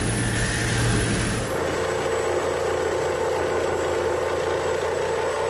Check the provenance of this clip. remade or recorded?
recorded